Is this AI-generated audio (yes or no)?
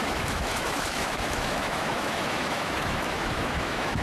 yes